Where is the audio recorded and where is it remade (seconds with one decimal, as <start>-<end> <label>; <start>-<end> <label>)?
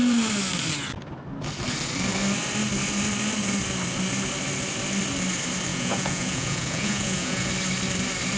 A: 0.0-5.7 recorded; 5.7-7.5 remade; 7.5-8.4 recorded